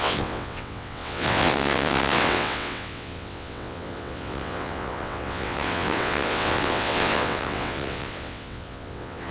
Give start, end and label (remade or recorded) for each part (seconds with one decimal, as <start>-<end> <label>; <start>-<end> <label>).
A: 0.0-9.3 remade